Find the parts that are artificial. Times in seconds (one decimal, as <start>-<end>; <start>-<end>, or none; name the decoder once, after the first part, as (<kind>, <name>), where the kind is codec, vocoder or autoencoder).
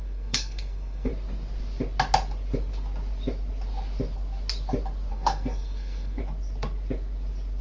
0.0-1.1 (codec, SNAC); 5.1-6.2